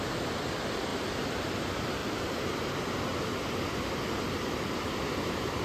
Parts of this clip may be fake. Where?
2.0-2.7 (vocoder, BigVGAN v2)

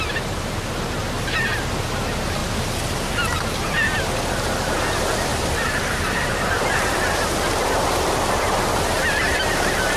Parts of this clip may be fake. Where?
5.3-8.6 (vocoder, BigVGAN v2)